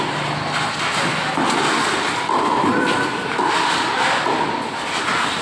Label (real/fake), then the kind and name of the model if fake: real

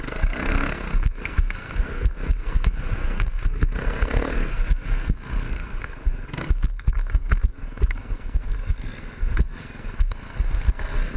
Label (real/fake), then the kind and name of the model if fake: fake, codec, SNAC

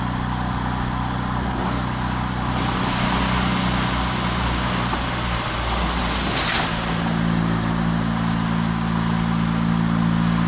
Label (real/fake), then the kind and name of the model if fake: real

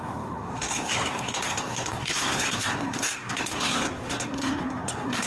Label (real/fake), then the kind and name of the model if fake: fake, codec, SNAC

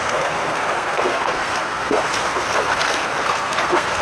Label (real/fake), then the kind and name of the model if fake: fake, codec, SNAC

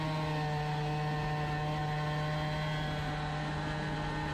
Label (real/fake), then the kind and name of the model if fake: real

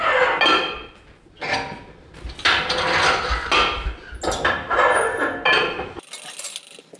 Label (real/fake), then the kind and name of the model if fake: real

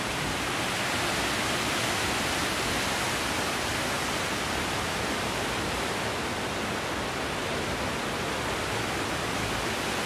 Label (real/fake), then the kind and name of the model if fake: real